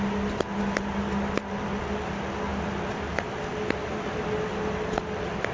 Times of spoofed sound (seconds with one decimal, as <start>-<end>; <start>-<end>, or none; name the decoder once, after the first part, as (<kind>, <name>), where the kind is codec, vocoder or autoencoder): none